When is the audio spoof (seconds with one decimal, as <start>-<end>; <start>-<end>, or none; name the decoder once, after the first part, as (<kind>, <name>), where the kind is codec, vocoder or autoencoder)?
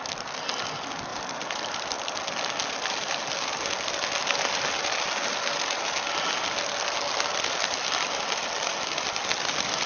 1.1-2.2 (vocoder, BigVGAN v2)